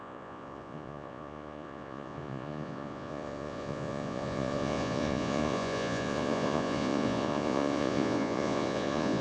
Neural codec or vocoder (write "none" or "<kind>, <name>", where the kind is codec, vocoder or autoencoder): vocoder, Vocos